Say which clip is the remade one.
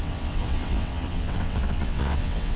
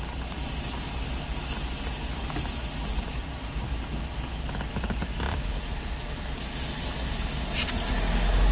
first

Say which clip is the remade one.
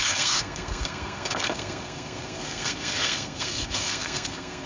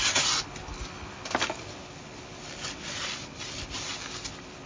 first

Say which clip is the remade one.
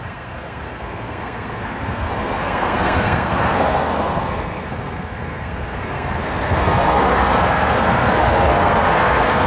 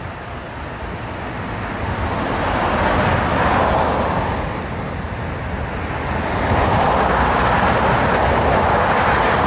first